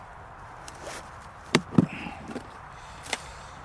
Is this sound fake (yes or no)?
yes